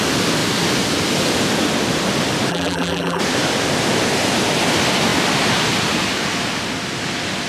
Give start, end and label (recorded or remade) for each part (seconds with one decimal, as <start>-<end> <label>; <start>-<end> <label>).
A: 0.0-2.5 recorded; 2.5-3.2 remade; 3.2-7.5 recorded